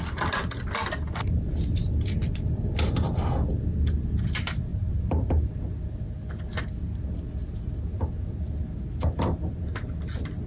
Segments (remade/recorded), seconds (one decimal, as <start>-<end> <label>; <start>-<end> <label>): 0.0-4.7 recorded; 4.7-5.5 remade; 5.5-10.5 recorded